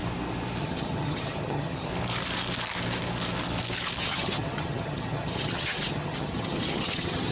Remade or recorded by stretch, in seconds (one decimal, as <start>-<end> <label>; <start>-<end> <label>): 0.0-0.6 recorded; 0.6-1.9 remade; 1.9-4.0 recorded; 4.0-7.3 remade